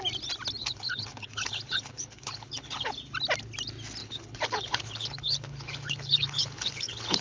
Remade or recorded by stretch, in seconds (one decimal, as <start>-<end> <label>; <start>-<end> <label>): 0.0-0.6 recorded; 0.6-2.9 remade; 2.9-4.0 recorded; 4.0-7.2 remade

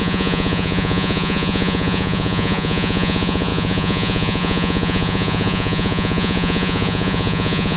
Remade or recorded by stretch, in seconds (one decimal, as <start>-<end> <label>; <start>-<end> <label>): 0.0-7.8 remade

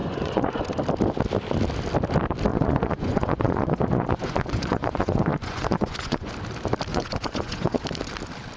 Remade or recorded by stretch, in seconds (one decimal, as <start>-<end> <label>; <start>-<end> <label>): 0.0-0.6 remade; 0.6-2.5 recorded; 2.5-6.3 remade; 6.3-6.9 recorded; 6.9-7.8 remade; 7.8-8.6 recorded